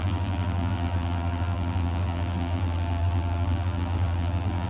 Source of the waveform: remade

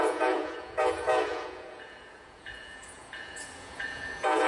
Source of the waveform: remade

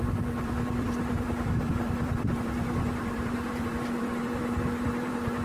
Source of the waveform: remade